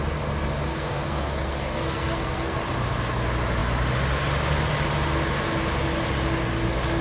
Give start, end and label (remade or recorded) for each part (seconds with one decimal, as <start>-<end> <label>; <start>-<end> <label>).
0.0-0.7 recorded; 0.7-2.6 remade; 2.6-7.0 recorded